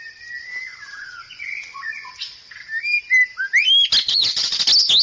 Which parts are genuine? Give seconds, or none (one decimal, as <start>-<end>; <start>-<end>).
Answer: 0.0-0.7; 2.1-4.1; 4.6-5.0